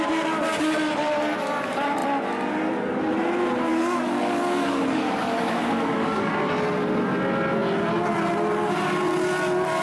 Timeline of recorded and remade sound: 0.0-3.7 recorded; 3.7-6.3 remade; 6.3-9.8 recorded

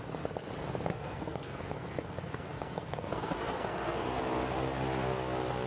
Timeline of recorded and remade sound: 0.0-0.9 recorded; 0.9-4.2 remade; 4.2-5.7 recorded

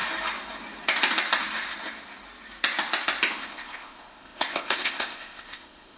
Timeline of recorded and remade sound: 0.0-3.4 recorded; 3.4-6.0 remade

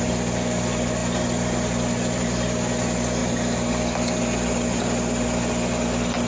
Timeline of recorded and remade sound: 0.0-6.3 recorded

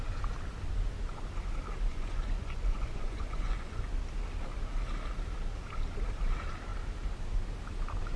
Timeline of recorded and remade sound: 0.0-1.9 recorded; 1.9-3.9 remade; 3.9-8.2 recorded

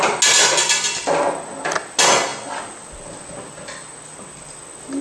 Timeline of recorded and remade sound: 0.0-5.0 recorded

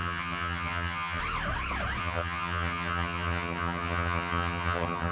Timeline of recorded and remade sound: 0.0-1.2 remade; 1.2-2.0 recorded; 2.0-5.1 remade

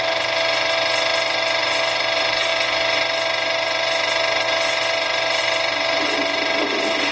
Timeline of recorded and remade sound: 0.0-7.1 recorded